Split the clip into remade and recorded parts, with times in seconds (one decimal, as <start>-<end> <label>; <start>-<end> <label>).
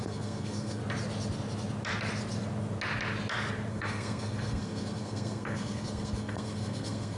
0.0-0.8 remade; 0.8-3.7 recorded; 3.7-7.2 remade